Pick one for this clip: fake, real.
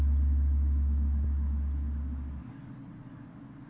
real